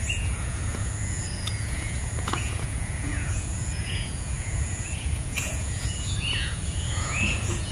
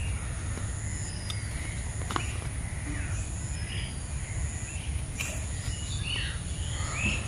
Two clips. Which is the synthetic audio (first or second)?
first